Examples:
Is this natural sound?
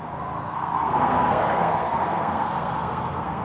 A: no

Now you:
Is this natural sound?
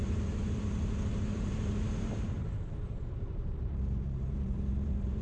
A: no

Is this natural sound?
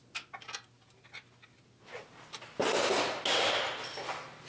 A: yes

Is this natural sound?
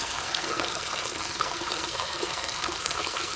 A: no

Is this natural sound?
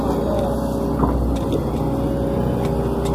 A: yes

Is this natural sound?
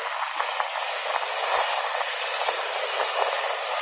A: yes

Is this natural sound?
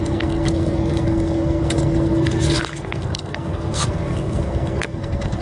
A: no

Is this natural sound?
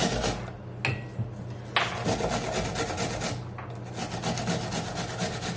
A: yes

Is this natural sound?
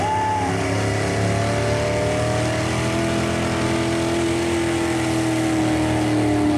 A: yes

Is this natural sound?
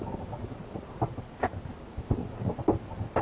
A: yes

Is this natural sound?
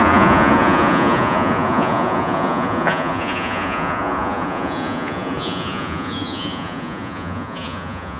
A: no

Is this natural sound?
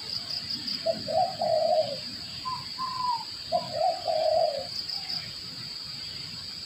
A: no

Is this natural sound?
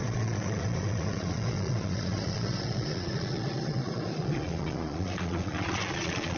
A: no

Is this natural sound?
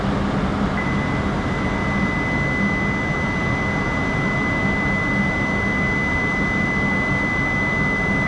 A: yes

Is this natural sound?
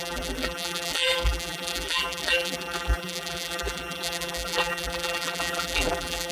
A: no